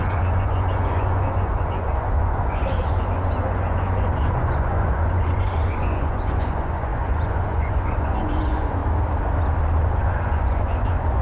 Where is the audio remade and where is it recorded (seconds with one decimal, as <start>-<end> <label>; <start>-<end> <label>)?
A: 0.0-8.8 remade; 8.8-10.0 recorded; 10.0-11.2 remade